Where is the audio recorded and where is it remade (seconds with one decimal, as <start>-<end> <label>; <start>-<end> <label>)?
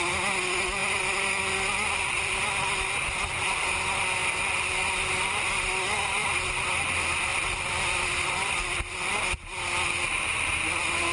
0.0-0.8 recorded; 0.8-1.5 remade; 1.5-11.1 recorded